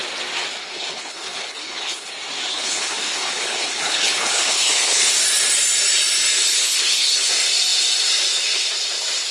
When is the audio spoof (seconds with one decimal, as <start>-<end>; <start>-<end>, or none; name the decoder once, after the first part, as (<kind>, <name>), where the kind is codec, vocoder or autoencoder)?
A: 0.6-2.1 (codec, HILCodec); 2.5-5.1; 6.5-7.3